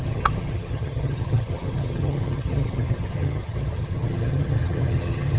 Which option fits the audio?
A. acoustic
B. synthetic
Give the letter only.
B